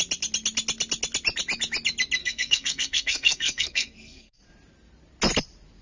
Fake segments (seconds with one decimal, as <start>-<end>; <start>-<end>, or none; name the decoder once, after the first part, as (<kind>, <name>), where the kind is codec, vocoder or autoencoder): 2.2-4.4 (codec, SNAC)